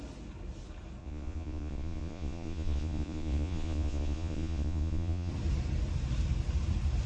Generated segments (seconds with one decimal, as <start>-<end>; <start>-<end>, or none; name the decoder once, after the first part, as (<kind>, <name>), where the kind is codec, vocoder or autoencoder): 1.0-5.3 (vocoder, Vocos)